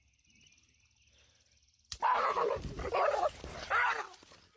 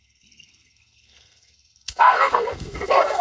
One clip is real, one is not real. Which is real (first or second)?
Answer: first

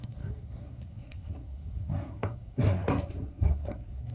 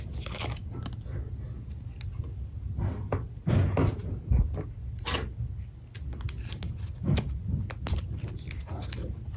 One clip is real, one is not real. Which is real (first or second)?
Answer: second